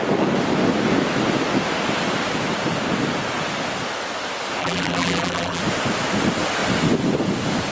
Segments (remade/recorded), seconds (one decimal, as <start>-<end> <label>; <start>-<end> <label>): 0.0-4.6 recorded; 4.6-5.6 remade; 5.6-7.7 recorded